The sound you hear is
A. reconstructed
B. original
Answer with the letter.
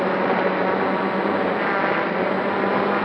B